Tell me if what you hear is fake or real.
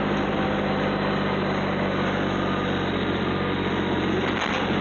real